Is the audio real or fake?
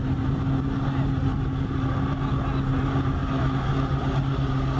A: real